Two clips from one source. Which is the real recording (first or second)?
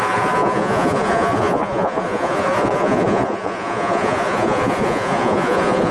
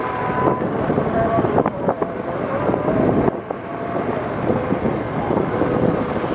second